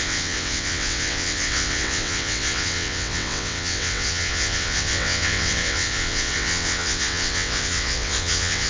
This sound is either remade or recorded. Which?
remade